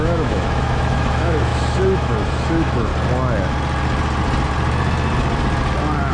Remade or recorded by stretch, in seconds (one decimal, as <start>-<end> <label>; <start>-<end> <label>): 0.0-2.9 remade; 2.9-6.1 recorded